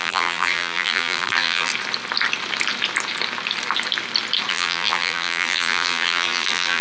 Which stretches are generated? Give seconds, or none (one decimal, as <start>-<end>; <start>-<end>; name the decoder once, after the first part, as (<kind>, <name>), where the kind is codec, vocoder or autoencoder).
0.0-1.7 (vocoder, BigVGAN v2); 4.5-6.8